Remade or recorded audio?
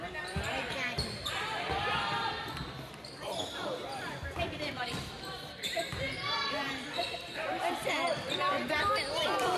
remade